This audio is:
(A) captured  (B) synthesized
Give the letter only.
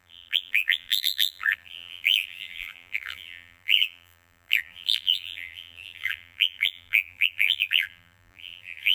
B